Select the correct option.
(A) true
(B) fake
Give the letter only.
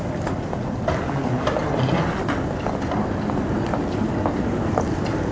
A